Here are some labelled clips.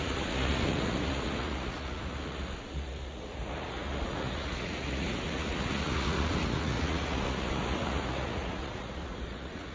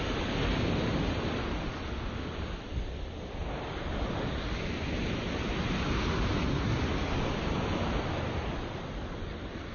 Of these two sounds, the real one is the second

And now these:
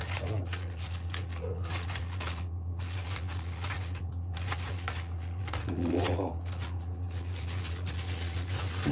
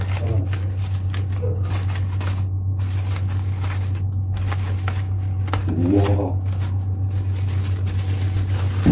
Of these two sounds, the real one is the second